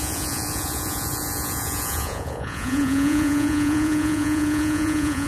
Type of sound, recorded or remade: remade